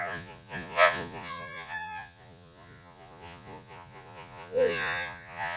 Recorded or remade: remade